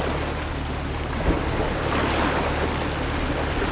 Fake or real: real